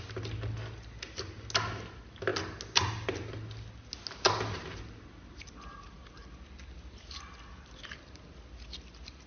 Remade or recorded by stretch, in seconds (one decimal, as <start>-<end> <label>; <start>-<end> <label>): 0.0-9.3 recorded